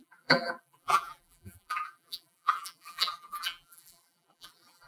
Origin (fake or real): fake